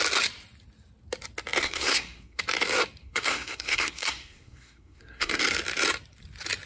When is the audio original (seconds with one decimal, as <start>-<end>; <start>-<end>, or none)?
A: 0.0-1.6; 2.4-3.0; 5.4-6.7